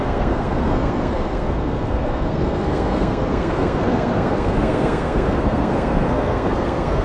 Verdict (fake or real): fake